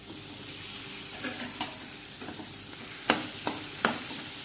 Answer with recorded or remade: recorded